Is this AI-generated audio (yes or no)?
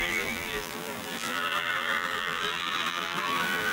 yes